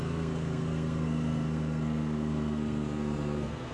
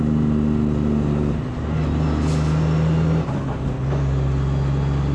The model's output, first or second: first